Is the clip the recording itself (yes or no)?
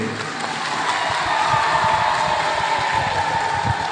yes